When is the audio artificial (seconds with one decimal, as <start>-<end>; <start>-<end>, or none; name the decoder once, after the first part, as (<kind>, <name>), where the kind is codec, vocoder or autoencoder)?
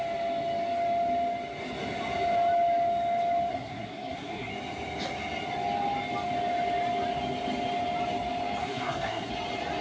3.5-4.5 (codec, SNAC); 8.6-9.3